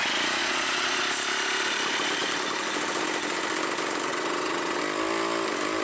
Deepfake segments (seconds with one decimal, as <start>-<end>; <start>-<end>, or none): 0.4-1.0; 4.1-4.8